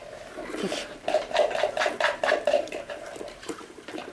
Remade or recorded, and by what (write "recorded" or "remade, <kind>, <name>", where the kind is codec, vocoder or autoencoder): remade, vocoder, BigVGAN v2